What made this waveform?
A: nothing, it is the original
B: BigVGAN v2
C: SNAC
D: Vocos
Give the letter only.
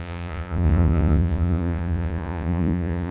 D